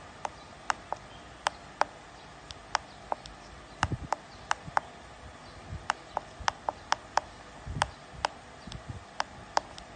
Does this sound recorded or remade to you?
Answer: recorded